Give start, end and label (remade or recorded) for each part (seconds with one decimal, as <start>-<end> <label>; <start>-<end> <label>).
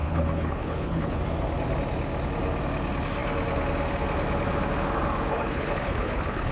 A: 0.0-1.2 remade; 1.2-5.3 recorded; 5.3-6.5 remade